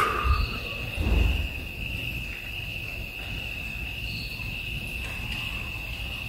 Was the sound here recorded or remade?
recorded